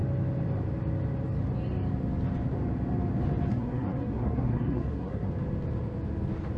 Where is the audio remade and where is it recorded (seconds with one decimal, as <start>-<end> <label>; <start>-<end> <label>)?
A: 0.0-3.5 recorded; 3.5-5.3 remade; 5.3-6.6 recorded